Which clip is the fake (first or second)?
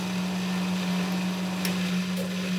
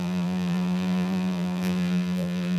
second